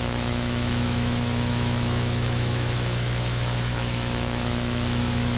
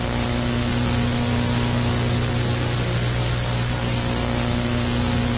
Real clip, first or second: second